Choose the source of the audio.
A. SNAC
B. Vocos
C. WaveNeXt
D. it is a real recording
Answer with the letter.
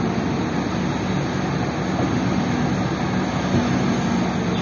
D